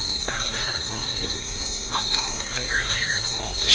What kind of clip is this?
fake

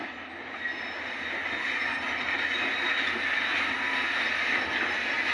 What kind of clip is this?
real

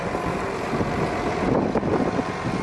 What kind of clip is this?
real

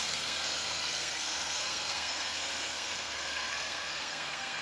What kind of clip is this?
fake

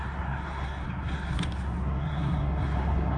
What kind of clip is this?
fake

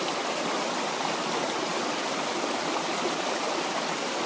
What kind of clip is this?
real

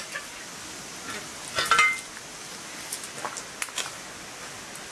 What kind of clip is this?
real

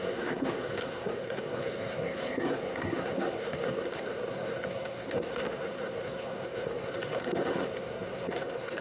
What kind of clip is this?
fake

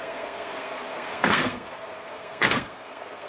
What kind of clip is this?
fake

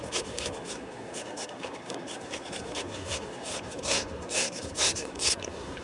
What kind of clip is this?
fake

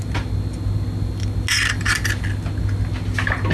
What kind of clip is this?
real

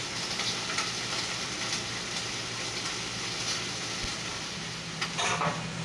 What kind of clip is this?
real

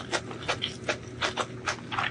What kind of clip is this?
real